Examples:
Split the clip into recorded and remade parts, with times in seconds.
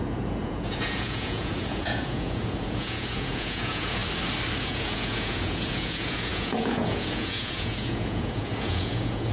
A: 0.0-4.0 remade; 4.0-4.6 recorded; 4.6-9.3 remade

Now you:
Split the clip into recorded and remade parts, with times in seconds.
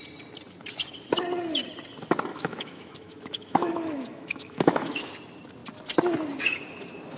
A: 0.0-2.3 recorded; 2.3-5.1 remade; 5.1-7.2 recorded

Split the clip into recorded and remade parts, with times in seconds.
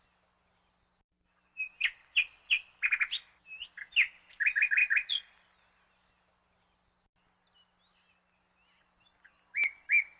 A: 0.0-10.2 recorded